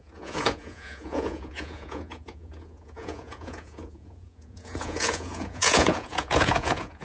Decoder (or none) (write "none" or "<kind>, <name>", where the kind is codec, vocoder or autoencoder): vocoder, Vocos